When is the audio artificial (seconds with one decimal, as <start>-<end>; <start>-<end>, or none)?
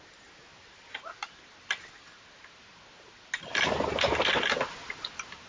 none